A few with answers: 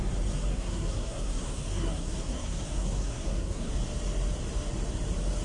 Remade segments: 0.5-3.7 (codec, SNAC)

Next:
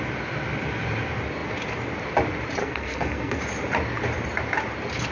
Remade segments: 2.6-3.4 (codec, SNAC)